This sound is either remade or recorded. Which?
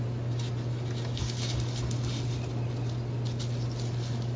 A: recorded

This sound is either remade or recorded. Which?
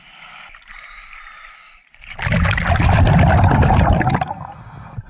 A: recorded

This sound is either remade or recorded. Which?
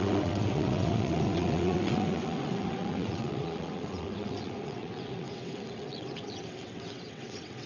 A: remade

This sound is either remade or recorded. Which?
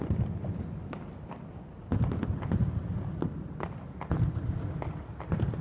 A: recorded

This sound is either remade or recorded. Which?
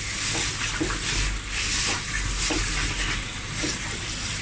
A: remade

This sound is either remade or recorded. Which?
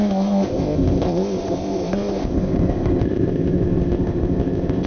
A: remade